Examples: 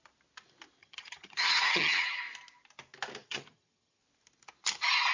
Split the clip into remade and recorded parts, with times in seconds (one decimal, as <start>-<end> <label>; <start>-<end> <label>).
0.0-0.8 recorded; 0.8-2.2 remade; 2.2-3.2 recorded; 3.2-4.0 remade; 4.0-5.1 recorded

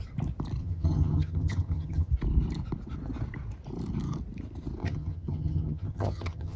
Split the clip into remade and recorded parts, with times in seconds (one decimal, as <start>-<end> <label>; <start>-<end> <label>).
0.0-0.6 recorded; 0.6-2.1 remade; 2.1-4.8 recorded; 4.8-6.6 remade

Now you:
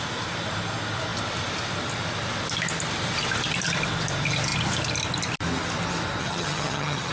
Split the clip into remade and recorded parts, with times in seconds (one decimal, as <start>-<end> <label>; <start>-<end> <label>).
0.0-6.2 recorded; 6.2-7.1 remade

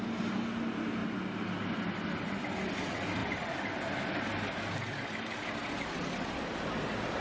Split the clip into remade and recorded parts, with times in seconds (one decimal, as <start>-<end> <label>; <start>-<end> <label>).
0.0-7.2 recorded

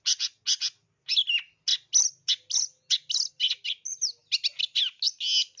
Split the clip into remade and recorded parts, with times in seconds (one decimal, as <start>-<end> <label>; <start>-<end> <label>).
0.0-5.6 recorded

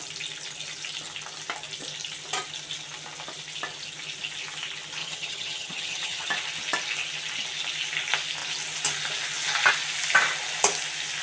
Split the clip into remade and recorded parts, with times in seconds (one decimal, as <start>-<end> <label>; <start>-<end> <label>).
0.0-5.0 recorded; 5.0-6.3 remade; 6.3-11.2 recorded

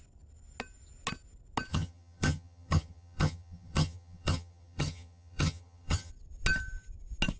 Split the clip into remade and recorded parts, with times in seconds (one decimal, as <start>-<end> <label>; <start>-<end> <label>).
0.0-1.7 recorded; 1.7-6.1 remade; 6.1-7.4 recorded